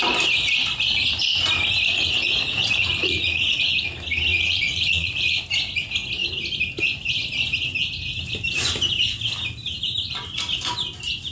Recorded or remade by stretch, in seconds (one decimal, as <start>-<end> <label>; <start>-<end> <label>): 0.0-1.9 recorded; 1.9-3.6 remade; 3.6-4.3 recorded; 4.3-5.4 remade; 5.4-11.3 recorded

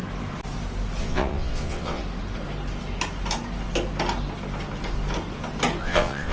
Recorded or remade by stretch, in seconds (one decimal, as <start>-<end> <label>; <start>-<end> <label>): 0.0-1.0 recorded; 1.0-2.0 remade; 2.0-5.8 recorded; 5.8-6.3 remade

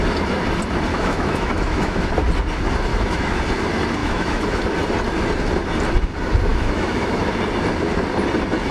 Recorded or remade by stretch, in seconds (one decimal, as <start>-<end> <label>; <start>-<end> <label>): 0.0-0.9 recorded; 0.9-2.1 remade; 2.1-2.9 recorded; 2.9-3.4 remade; 3.4-4.0 recorded; 4.0-4.6 remade; 4.6-6.5 recorded; 6.5-7.2 remade; 7.2-8.7 recorded

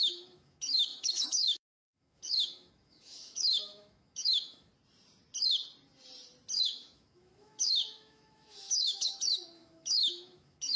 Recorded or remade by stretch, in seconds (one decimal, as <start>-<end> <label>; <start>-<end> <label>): 0.0-4.7 remade; 4.7-6.6 recorded; 6.6-10.8 remade

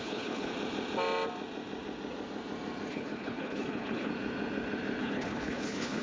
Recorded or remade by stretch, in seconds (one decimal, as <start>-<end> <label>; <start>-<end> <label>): 0.0-0.5 remade; 0.5-2.9 recorded; 2.9-4.1 remade; 4.1-5.0 recorded; 5.0-6.0 remade

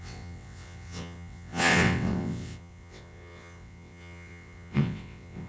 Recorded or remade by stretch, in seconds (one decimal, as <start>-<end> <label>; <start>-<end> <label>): 0.0-5.5 remade

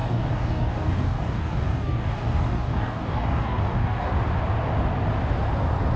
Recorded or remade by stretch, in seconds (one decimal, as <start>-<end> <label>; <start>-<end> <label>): 0.0-4.1 remade; 4.1-6.0 recorded